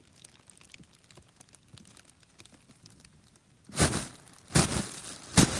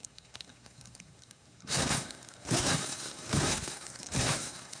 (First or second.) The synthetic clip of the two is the second